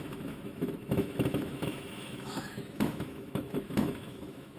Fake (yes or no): yes